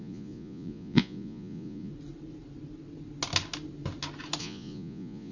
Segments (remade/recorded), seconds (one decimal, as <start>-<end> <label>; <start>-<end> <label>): 0.0-1.9 remade; 1.9-4.4 recorded; 4.4-5.3 remade

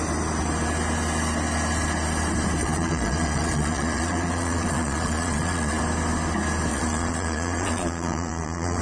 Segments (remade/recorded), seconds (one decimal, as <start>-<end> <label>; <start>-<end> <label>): 0.0-2.6 recorded; 2.6-5.8 remade; 5.8-6.7 recorded; 6.7-8.8 remade

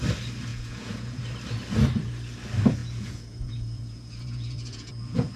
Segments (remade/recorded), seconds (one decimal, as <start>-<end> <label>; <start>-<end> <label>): 0.0-0.5 recorded; 0.5-1.2 remade; 1.2-2.8 recorded; 2.8-5.4 remade

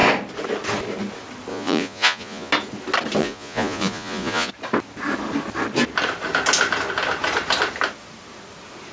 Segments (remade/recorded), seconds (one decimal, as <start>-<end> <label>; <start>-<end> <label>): 0.0-1.5 recorded; 1.5-2.5 remade; 2.5-3.2 recorded; 3.2-4.5 remade; 4.5-8.9 recorded

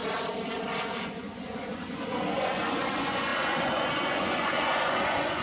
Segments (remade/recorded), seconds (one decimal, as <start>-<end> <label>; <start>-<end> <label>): 0.0-0.8 recorded; 0.8-5.4 remade

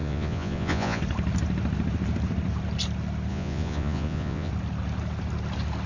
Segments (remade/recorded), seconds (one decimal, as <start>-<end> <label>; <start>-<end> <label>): 0.0-1.0 remade; 1.0-3.3 recorded; 3.3-4.5 remade; 4.5-5.9 recorded

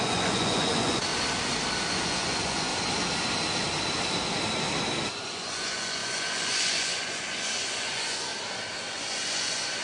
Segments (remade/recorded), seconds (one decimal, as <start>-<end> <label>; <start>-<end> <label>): 0.0-1.1 remade; 1.1-1.9 recorded; 1.9-2.7 remade; 2.7-5.1 recorded; 5.1-8.3 remade; 8.3-8.9 recorded; 8.9-9.8 remade

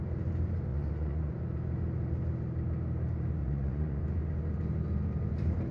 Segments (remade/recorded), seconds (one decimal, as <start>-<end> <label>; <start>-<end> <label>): 0.0-0.7 recorded; 0.7-1.3 remade; 1.3-3.4 recorded; 3.4-4.0 remade; 4.0-5.7 recorded